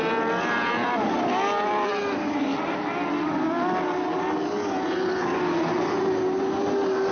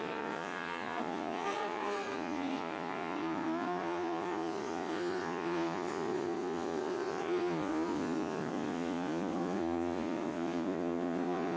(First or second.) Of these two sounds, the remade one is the second